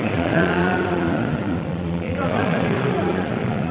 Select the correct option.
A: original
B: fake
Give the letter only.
B